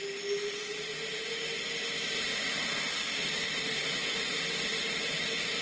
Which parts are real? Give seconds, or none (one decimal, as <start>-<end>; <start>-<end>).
0.0-5.6